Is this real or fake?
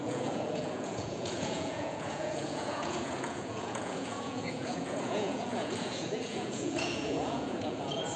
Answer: fake